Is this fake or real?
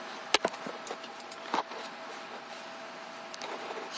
real